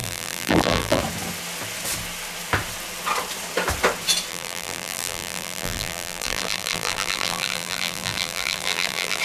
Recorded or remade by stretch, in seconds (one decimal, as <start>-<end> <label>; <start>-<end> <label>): 0.0-1.0 remade; 1.0-4.3 recorded; 4.3-9.2 remade